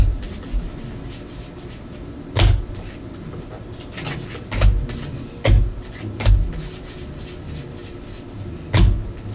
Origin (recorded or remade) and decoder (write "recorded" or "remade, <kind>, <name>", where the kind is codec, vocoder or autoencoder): recorded